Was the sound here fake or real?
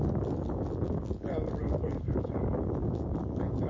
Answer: fake